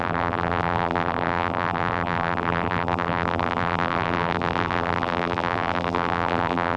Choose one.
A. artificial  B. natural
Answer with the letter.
A